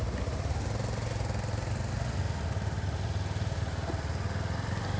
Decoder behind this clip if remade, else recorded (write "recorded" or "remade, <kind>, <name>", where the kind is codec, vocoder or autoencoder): recorded